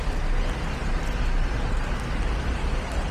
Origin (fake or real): real